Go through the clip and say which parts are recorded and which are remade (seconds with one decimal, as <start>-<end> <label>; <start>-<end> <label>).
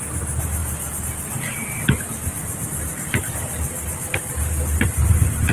0.0-5.5 recorded